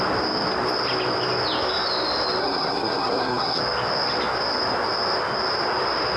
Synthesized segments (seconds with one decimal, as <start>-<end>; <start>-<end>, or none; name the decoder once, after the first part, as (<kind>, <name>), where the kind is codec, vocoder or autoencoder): 2.4-3.6 (codec, SNAC)